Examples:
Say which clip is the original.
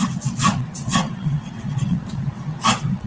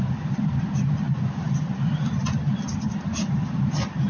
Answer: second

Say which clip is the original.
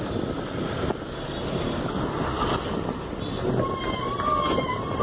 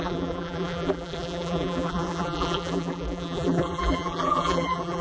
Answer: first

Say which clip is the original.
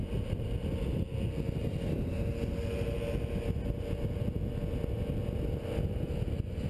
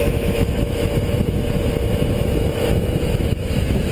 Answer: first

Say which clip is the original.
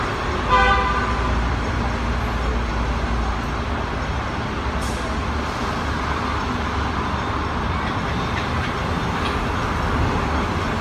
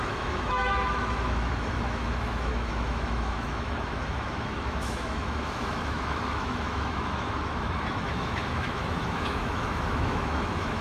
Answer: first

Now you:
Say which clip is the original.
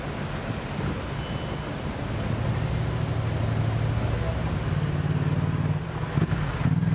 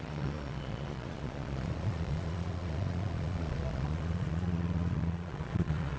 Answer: first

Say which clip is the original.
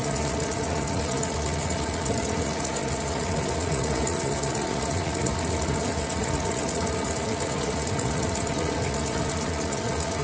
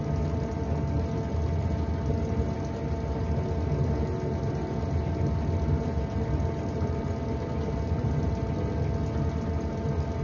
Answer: second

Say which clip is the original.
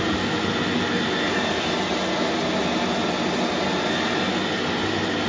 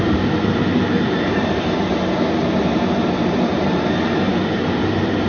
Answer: first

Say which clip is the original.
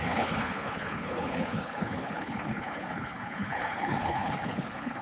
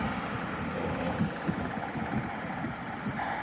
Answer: second